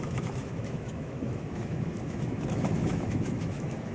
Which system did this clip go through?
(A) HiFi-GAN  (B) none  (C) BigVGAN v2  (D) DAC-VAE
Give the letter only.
D